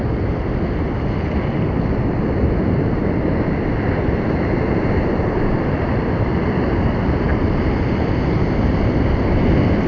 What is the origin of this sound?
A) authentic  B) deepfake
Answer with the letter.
A